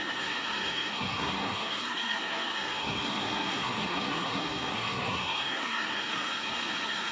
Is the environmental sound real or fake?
fake